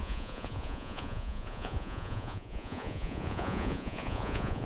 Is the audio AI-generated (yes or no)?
yes